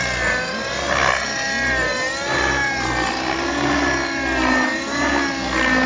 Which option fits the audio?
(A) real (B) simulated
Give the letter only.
A